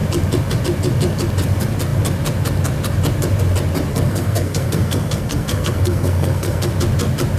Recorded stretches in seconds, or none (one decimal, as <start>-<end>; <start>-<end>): 0.0-3.9; 6.7-7.4